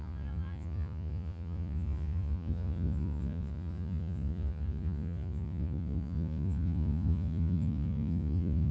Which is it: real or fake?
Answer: fake